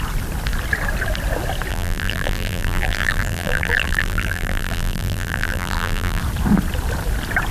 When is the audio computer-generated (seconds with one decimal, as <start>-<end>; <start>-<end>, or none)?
1.7-6.2